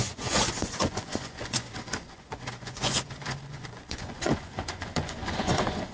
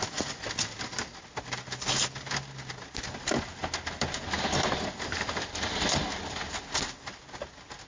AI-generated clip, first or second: first